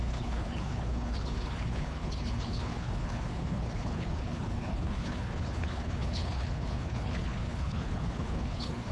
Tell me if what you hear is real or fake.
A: fake